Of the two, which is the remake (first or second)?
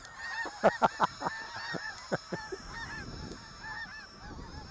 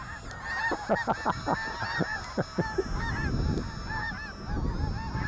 first